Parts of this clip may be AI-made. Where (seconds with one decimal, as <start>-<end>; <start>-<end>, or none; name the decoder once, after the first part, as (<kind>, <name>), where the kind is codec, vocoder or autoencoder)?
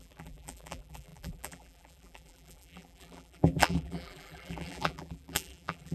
0.0-5.9 (vocoder, BigVGAN v2)